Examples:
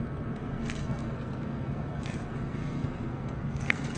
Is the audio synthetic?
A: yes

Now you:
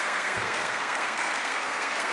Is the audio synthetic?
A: yes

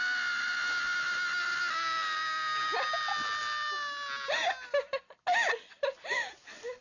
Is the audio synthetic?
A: no